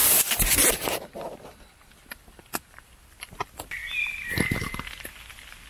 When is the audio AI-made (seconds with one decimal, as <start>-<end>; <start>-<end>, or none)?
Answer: 0.0-3.4; 3.8-4.6